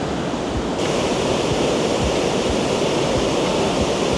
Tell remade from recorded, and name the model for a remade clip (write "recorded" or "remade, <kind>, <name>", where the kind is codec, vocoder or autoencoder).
recorded